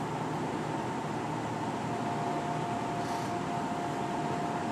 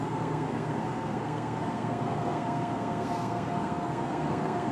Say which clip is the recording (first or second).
first